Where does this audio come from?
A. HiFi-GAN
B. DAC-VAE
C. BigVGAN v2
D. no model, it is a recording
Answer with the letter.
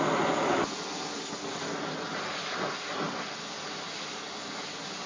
D